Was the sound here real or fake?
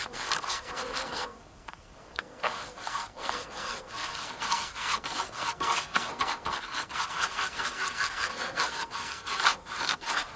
fake